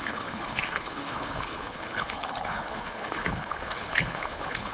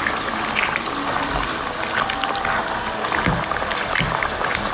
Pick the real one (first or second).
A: second